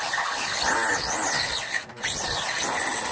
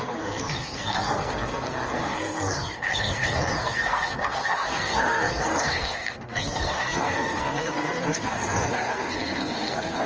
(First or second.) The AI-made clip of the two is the second